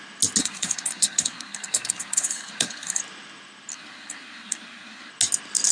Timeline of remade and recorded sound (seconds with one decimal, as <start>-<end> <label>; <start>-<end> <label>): 0.0-0.4 recorded; 0.4-3.0 remade; 3.0-3.7 recorded; 3.7-5.1 remade; 5.1-5.7 recorded